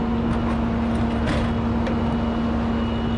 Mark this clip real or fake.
real